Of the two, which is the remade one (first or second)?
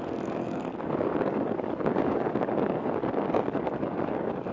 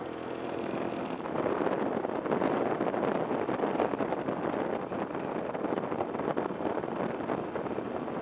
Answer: first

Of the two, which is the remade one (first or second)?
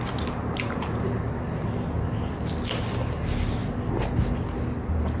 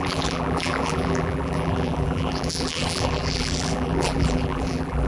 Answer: second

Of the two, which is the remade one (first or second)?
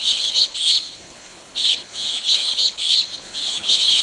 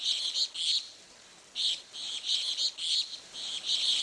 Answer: first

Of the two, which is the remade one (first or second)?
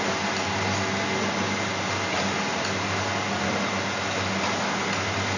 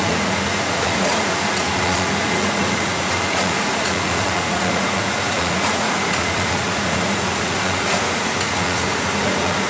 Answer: second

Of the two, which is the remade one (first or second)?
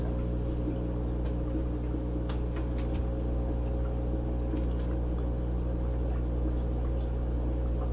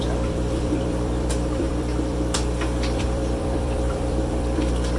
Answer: second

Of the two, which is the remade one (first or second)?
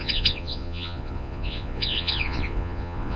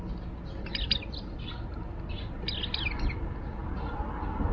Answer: first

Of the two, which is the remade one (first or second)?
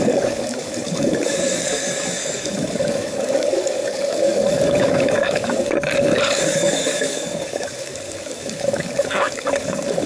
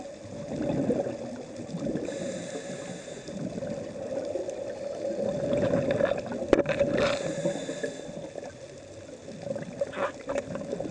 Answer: first